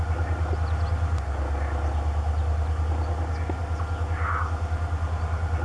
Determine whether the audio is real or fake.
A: real